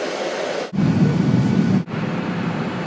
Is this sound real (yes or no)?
yes